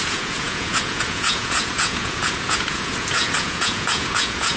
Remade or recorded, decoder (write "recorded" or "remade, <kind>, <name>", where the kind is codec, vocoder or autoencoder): remade, vocoder, Vocos